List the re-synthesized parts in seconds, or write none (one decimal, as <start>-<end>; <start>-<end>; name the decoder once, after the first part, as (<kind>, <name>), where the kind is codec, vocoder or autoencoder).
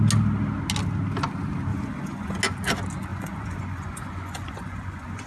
1.7-2.4 (vocoder, Vocos); 3.1-5.3